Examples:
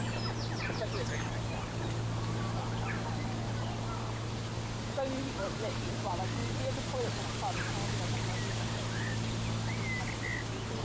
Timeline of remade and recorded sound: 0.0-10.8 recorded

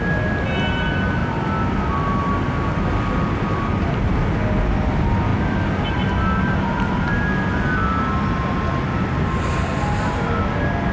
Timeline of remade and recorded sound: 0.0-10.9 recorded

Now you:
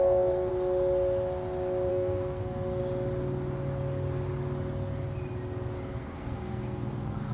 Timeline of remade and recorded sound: 0.0-0.5 remade; 0.5-1.9 recorded; 1.9-2.8 remade; 2.8-5.8 recorded; 5.8-7.3 remade

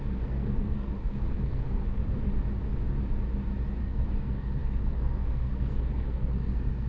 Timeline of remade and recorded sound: 0.0-2.0 remade; 2.0-3.8 recorded; 3.8-6.9 remade